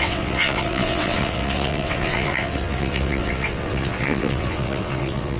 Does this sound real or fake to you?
fake